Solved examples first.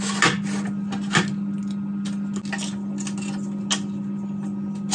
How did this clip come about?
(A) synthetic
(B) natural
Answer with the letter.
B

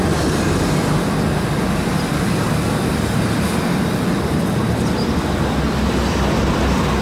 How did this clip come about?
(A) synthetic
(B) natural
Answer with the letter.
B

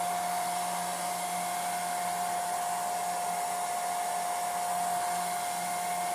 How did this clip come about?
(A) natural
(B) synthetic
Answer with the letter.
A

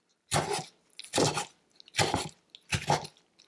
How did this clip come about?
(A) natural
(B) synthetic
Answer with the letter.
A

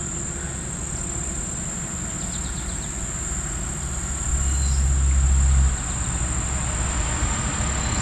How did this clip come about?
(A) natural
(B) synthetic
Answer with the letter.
A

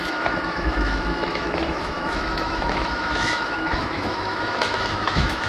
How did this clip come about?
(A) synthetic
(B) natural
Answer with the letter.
A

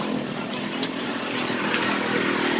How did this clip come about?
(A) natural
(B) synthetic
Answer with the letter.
A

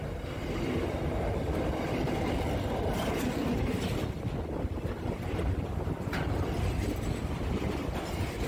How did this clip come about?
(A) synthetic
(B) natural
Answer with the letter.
B